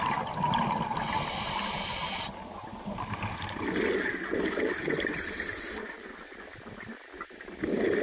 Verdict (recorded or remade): recorded